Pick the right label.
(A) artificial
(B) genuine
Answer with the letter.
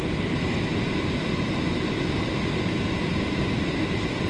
B